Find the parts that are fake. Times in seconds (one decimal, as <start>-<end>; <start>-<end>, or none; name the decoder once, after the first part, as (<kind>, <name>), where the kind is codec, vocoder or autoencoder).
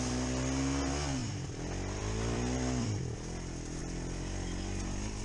1.2-3.0 (vocoder, BigVGAN v2)